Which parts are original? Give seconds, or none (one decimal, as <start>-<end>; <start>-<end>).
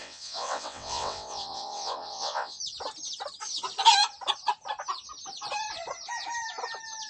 2.6-7.1